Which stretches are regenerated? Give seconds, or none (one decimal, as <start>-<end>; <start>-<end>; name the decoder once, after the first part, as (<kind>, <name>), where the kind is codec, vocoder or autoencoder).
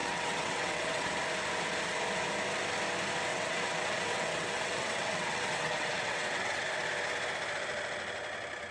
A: 0.0-1.1 (vocoder, WaveNeXt); 3.3-6.7